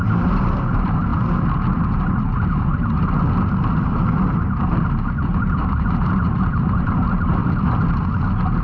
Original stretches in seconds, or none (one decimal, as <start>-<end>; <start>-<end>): 1.1-3.8; 7.4-8.6